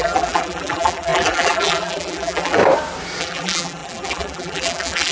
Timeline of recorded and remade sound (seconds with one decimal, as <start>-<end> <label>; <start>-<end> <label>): 0.0-2.6 remade; 2.6-3.2 recorded; 3.2-5.1 remade